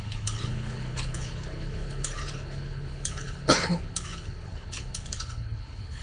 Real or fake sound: fake